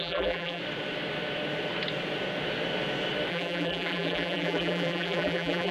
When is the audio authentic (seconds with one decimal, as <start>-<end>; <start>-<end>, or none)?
0.6-3.3